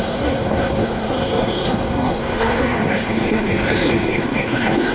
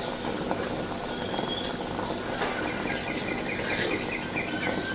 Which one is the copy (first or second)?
first